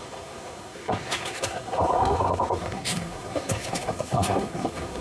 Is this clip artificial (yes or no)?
yes